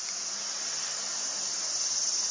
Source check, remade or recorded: recorded